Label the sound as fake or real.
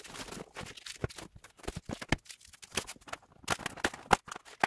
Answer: real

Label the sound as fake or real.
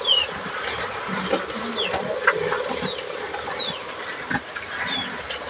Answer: real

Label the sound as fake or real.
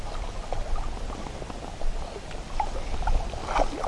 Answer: real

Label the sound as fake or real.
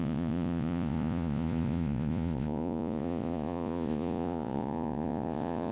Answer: fake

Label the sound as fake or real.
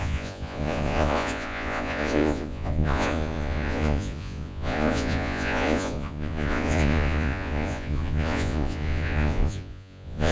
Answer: fake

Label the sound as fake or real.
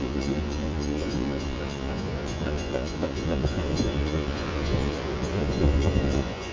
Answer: fake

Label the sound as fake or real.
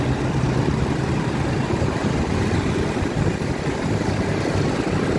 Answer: real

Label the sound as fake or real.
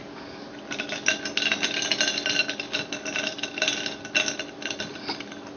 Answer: real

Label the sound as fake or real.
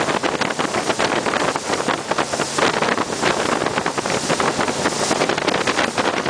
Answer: real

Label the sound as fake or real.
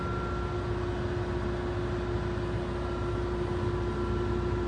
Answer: real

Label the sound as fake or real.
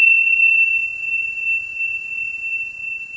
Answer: fake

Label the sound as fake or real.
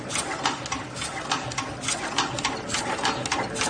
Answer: real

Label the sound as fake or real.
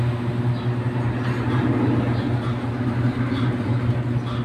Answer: real